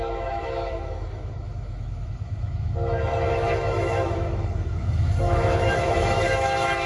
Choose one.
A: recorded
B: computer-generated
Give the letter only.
B